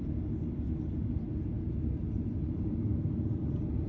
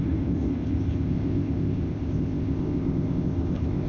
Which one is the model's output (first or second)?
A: second